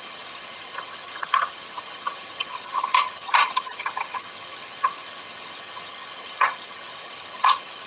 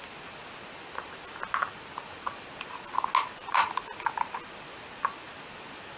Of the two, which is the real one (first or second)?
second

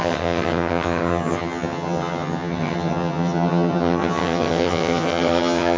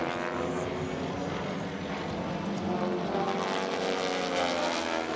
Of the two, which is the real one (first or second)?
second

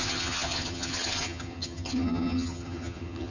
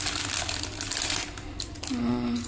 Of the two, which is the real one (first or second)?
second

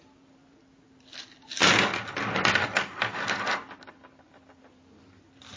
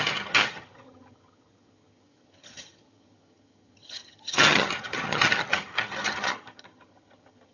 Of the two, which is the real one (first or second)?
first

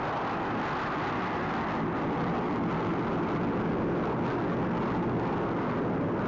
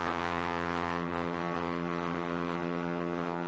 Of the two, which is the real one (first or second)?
first